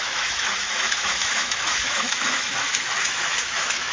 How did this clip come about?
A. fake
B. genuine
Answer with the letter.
A